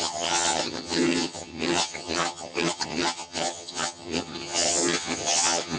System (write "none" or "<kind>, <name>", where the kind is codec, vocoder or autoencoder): vocoder, HiFi-GAN